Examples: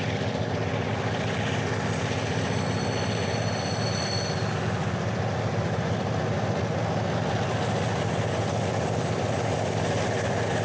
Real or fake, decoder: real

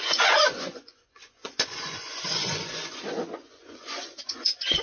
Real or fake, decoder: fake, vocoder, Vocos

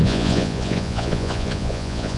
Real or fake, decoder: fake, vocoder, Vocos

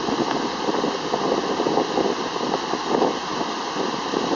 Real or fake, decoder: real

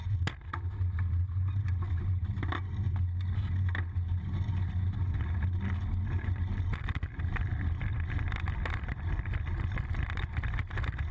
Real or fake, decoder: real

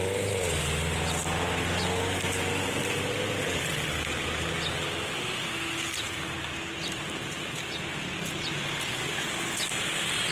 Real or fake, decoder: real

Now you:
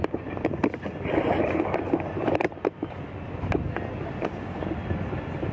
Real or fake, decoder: real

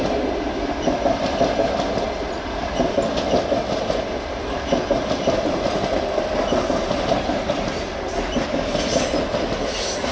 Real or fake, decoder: real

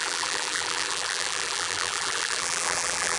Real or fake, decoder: fake, vocoder, BigVGAN v2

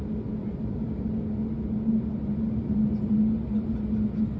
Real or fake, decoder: real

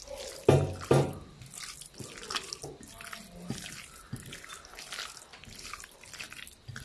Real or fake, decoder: real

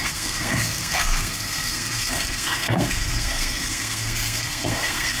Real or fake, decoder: fake, codec, SNAC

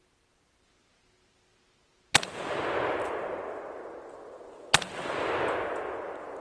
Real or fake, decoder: real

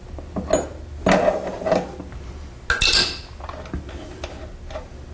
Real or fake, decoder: real